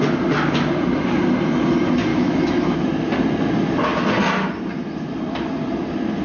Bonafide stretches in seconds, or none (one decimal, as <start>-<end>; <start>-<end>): 0.0-2.1; 2.8-6.2